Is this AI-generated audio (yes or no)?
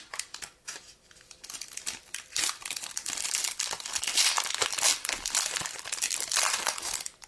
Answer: yes